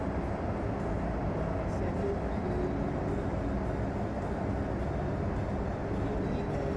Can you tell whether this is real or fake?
real